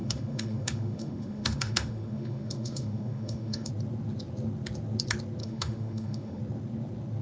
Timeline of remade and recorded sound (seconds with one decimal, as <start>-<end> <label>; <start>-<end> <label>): 0.0-3.7 remade; 3.7-5.4 recorded; 5.4-6.4 remade; 6.4-7.2 recorded